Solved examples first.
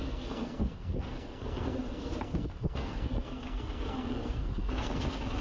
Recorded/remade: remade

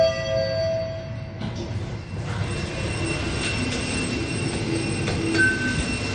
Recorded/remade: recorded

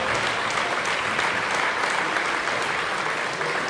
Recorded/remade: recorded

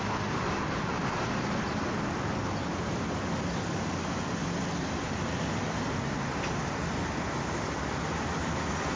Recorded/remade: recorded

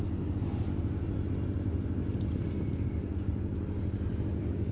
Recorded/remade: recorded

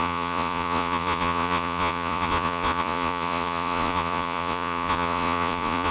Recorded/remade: remade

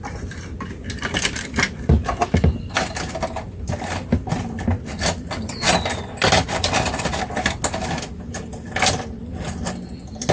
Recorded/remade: recorded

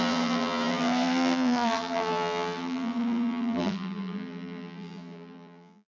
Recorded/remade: remade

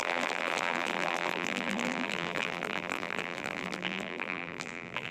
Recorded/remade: remade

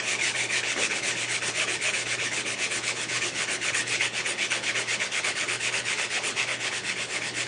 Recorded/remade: remade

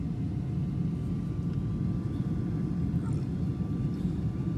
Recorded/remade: recorded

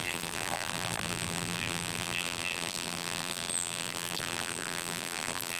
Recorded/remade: remade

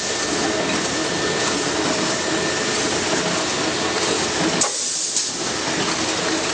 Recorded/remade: recorded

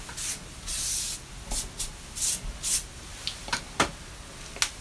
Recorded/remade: recorded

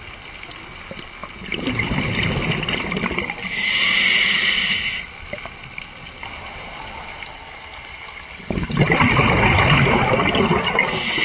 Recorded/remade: recorded